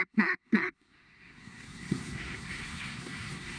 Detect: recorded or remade remade